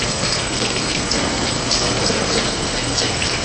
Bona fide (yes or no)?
no